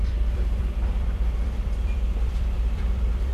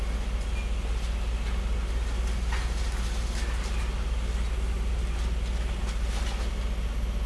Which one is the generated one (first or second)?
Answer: first